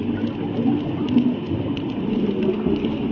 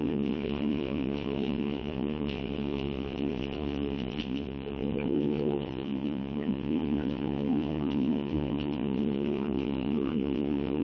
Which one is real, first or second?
first